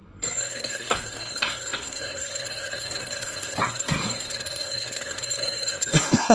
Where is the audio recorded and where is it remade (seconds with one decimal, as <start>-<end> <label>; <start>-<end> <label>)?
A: 0.0-6.3 remade